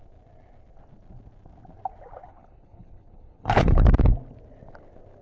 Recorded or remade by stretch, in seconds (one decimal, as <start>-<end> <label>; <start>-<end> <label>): 0.0-2.3 recorded; 2.3-3.8 remade; 3.8-5.2 recorded